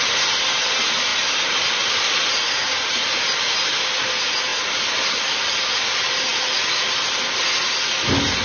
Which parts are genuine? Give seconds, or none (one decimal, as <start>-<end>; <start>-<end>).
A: 0.0-8.4